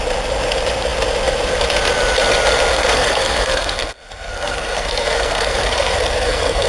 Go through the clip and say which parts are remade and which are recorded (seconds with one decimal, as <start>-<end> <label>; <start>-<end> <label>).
0.0-2.7 recorded; 2.7-6.7 remade